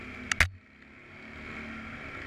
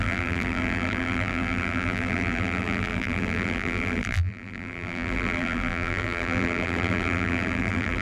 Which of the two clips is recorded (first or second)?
first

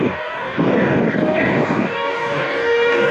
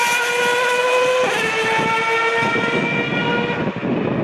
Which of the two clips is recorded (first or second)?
second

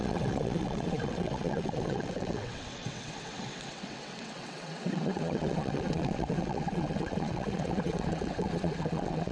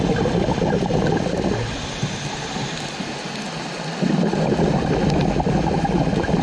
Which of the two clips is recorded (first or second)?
second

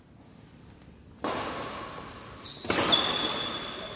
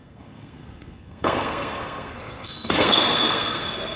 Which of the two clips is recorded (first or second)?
first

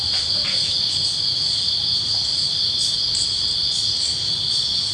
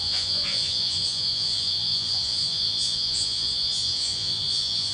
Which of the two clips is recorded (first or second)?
first